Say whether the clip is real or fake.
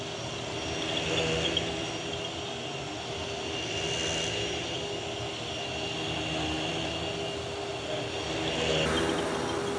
real